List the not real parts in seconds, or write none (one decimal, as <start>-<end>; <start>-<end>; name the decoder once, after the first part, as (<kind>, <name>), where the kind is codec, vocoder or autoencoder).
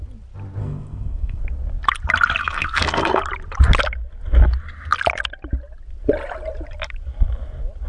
0.6-1.4 (codec, SNAC); 2.4-3.2